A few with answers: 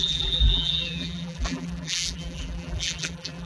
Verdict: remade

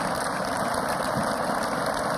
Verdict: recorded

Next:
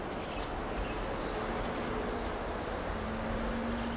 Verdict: recorded